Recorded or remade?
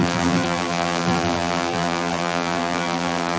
remade